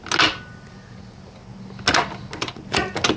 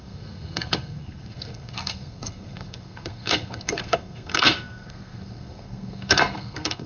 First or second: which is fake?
second